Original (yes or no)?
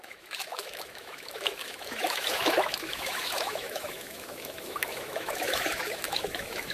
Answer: no